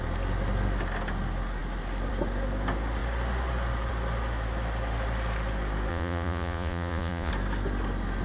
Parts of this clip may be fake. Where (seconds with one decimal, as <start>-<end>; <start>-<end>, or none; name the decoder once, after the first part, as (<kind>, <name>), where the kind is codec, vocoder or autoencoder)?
5.9-7.3 (vocoder, Vocos)